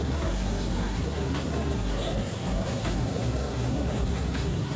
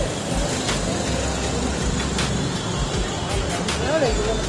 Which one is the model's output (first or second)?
first